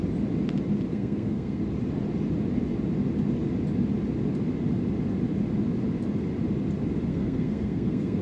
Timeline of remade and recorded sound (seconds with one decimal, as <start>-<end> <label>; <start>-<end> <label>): 0.0-0.9 recorded; 0.9-1.6 remade; 1.6-7.1 recorded; 7.1-8.2 remade